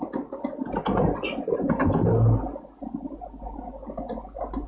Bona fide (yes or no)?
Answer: yes